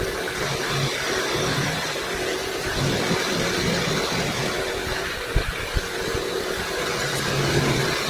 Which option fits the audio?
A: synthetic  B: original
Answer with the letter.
B